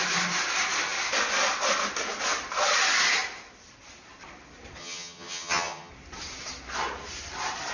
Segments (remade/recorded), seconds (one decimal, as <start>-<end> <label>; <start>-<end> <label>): 0.0-4.8 recorded; 4.8-5.9 remade; 5.9-7.7 recorded